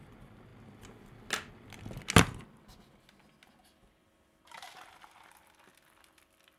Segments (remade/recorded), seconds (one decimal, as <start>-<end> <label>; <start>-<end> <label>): 0.0-6.6 recorded